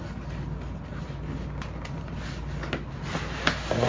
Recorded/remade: recorded